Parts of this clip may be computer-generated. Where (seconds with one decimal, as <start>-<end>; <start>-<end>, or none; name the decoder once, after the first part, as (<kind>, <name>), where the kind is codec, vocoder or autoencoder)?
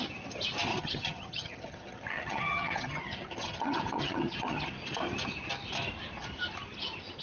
0.7-4.7 (vocoder, HiFi-GAN)